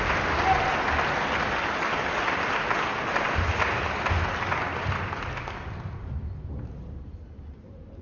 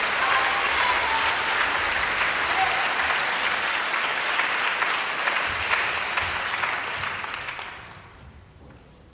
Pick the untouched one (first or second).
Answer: first